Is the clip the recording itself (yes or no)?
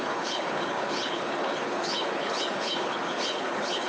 no